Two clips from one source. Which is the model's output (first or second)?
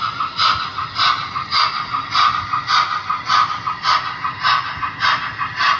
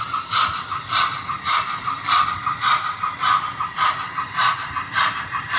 second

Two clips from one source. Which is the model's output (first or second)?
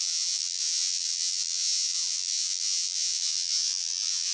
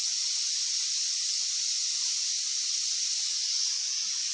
first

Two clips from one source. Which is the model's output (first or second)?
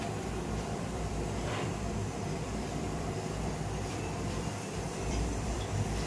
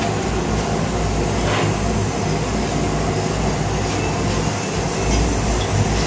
first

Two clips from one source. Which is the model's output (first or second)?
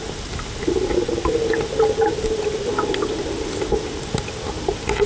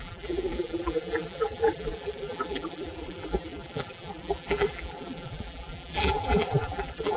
second